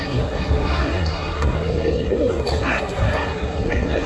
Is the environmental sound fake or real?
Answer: fake